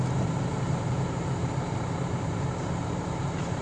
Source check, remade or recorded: remade